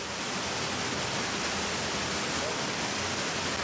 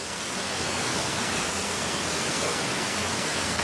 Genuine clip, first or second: first